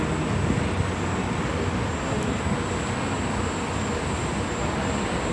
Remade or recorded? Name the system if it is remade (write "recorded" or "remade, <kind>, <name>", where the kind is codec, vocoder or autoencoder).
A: recorded